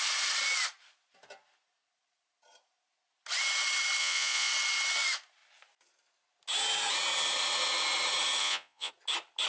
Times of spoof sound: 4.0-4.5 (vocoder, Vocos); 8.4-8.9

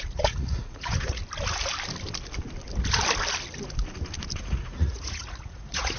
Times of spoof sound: 0.0-1.2 (vocoder, Vocos); 4.4-6.0

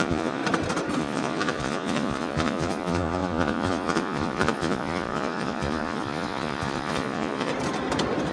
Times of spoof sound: 0.0-0.4 (vocoder, Vocos); 1.0-7.5

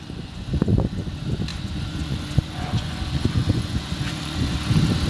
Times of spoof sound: 0.0-1.1 (vocoder, Vocos); 1.5-4.6

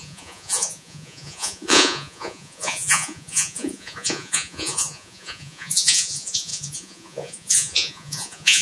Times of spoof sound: 0.0-8.6 (vocoder, Vocos)

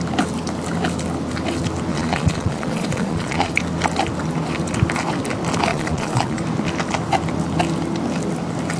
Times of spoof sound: 1.9-3.5 (vocoder, Vocos); 5.7-6.4